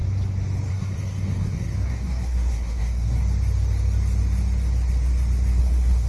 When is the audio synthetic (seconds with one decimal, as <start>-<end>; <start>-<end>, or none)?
0.7-3.2; 5.6-6.1